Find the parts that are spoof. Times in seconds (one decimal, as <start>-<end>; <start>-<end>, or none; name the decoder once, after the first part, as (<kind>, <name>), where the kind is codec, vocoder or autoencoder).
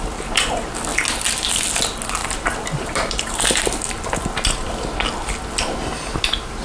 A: 2.2-3.9 (vocoder, BigVGAN v2)